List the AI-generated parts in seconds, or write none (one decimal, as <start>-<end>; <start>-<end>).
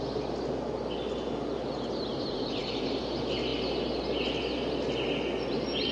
2.1-3.0